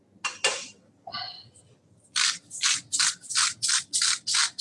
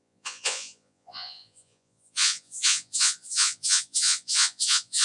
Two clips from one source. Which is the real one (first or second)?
first